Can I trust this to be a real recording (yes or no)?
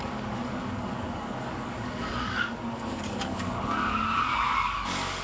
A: no